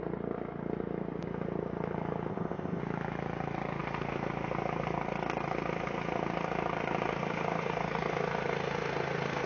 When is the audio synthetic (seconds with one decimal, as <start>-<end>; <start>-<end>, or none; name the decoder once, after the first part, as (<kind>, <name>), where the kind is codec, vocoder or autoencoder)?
2.3-2.8 (codec, ZipCodec)